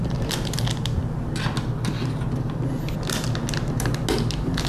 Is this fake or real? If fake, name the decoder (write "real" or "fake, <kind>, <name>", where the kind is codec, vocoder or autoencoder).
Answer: real